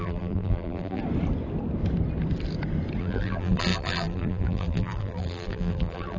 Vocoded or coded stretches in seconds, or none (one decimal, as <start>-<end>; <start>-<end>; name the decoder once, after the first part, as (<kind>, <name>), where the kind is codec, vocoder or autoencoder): 0.0-1.0 (vocoder, BigVGAN v2); 3.0-6.2